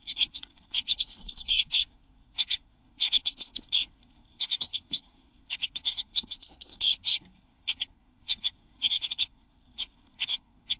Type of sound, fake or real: fake